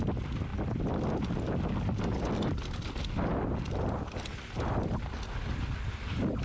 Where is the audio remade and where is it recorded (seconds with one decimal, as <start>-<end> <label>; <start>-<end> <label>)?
0.0-6.4 recorded